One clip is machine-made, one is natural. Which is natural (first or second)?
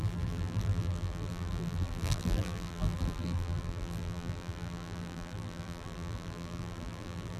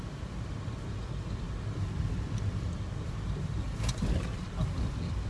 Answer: second